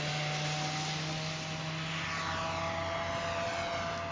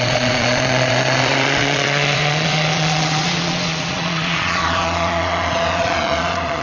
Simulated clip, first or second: second